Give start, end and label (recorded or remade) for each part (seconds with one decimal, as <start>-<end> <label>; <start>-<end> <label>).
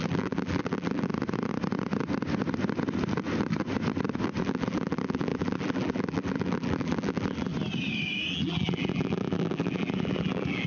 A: 0.0-1.1 remade; 1.1-4.4 recorded; 4.4-7.5 remade; 7.5-8.3 recorded; 8.3-10.7 remade